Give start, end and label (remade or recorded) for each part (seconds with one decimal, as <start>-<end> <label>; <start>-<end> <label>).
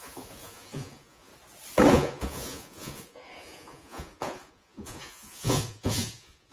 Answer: 0.0-1.3 remade; 1.3-1.9 recorded; 1.9-6.5 remade